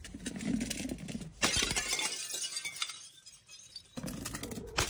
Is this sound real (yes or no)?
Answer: yes